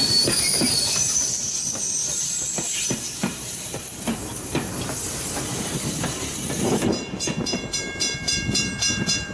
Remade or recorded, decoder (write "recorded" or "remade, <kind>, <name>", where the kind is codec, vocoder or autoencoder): remade, vocoder, BigVGAN v2